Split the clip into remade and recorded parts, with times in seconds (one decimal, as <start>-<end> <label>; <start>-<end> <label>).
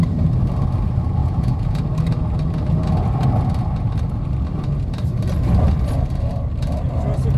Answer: 0.0-1.2 recorded; 1.2-1.8 remade; 1.8-7.4 recorded